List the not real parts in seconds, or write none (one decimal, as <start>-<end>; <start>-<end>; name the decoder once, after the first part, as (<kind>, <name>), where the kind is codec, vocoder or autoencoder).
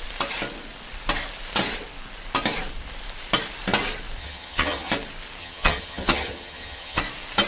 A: 4.2-4.9 (vocoder, HiFi-GAN); 5.4-7.0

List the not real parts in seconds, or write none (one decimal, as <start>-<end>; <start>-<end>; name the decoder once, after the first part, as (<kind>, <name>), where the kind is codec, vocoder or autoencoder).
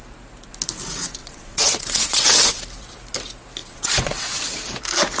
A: 1.2-2.6 (vocoder, WaveNeXt); 3.6-4.4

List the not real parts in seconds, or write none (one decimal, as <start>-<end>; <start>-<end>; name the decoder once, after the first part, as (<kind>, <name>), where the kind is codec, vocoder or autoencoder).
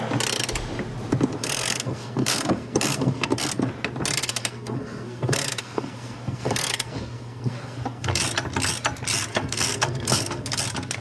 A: 1.4-3.7 (codec, SNAC); 4.2-8.2; 9.3-10.6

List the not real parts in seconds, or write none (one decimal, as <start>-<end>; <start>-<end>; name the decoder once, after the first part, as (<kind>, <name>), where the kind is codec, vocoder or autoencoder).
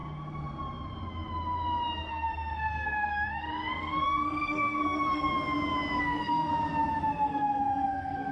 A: 2.1-5.3 (codec, SNAC); 6.0-6.5; 7.1-8.3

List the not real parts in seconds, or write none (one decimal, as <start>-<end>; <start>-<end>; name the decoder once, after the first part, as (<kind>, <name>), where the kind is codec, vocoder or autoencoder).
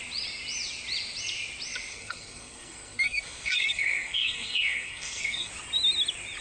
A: 1.9-5.5 (codec, SNAC)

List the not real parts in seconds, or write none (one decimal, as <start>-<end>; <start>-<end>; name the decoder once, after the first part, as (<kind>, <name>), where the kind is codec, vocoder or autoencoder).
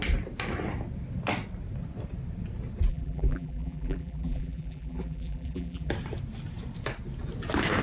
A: 2.9-5.9 (vocoder, BigVGAN v2)